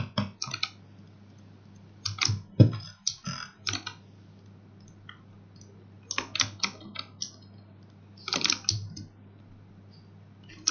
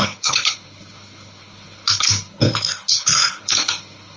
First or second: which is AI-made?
second